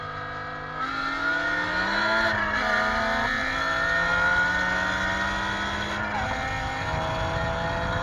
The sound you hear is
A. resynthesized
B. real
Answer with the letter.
B